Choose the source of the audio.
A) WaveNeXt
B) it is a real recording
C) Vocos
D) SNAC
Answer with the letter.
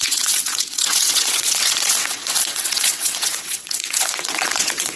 A